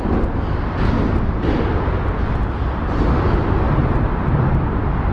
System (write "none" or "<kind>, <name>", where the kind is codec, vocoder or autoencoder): none